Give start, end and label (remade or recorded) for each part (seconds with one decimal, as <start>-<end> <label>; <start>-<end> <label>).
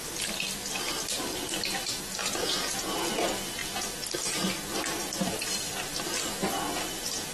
0.0-2.2 recorded; 2.2-3.0 remade; 3.0-7.3 recorded